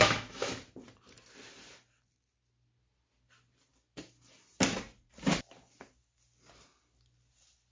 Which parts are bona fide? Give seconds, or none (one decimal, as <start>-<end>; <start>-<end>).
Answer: 0.5-7.7